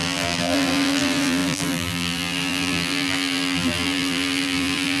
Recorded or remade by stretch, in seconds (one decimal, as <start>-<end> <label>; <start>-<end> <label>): 0.0-5.0 remade